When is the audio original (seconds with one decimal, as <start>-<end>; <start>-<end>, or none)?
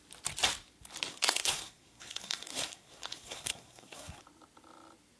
0.0-1.1; 4.2-5.2